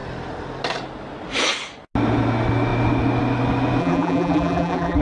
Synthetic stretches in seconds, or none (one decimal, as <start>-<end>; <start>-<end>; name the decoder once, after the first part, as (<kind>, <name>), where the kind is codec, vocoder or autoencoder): 3.8-5.0 (vocoder, BigVGAN v2)